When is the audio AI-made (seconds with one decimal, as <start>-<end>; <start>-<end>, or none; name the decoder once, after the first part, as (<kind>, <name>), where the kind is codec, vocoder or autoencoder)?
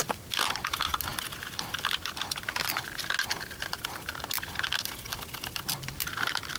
none